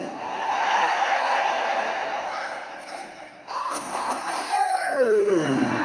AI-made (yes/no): yes